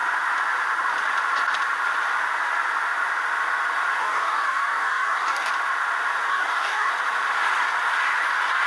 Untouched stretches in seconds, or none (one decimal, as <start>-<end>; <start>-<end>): 0.0-4.0; 5.5-6.3; 6.9-8.7